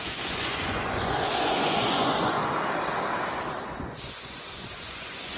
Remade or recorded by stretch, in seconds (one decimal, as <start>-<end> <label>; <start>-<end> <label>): 0.0-2.4 remade; 2.4-3.6 recorded; 3.6-5.4 remade